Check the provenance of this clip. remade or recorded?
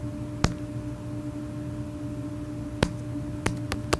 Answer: recorded